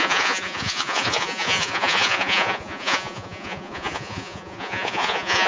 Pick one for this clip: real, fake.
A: fake